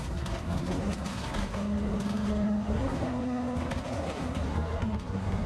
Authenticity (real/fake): fake